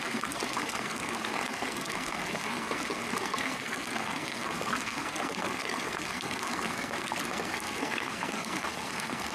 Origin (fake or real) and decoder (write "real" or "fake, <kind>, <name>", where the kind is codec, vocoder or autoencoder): fake, codec, SNAC